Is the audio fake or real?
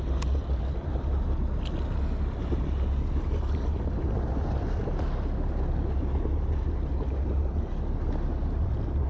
real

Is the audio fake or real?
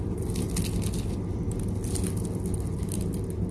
real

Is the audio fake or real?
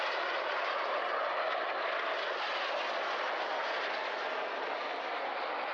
real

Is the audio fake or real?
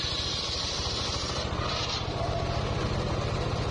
real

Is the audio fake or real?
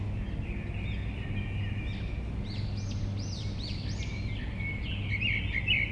real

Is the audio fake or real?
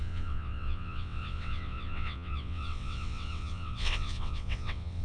fake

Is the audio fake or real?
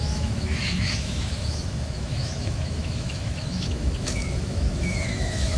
fake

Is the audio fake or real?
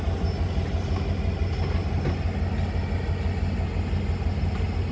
real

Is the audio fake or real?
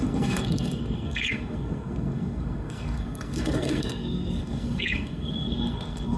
fake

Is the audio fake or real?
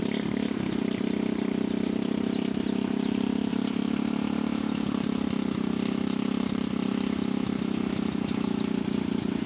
fake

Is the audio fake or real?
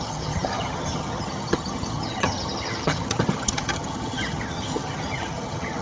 fake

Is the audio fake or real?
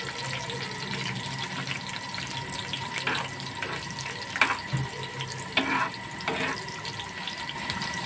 real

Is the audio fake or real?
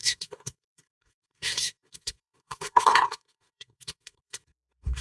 fake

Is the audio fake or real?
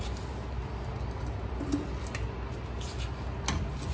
real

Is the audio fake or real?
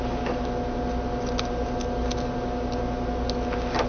real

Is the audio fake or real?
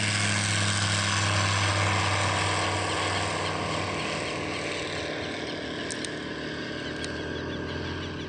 real